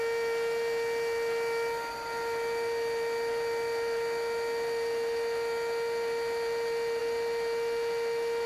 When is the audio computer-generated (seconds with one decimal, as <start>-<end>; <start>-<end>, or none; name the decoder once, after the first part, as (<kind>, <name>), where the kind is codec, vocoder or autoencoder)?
none